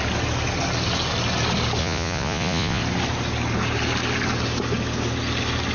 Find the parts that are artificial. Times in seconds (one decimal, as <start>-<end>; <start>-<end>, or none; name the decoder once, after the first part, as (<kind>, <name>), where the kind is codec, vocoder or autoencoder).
1.8-2.8 (vocoder, Vocos)